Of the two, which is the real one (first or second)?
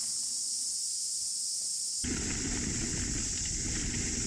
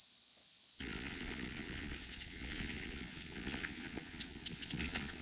first